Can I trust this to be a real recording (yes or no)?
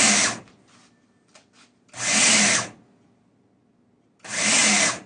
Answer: yes